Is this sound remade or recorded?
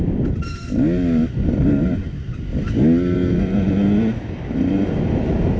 recorded